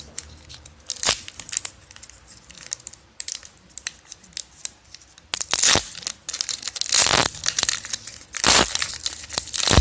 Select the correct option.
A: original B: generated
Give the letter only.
A